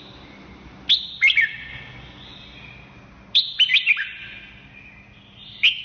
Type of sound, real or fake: real